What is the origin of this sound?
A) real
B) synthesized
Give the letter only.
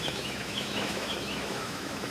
B